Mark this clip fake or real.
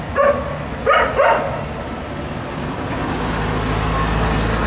real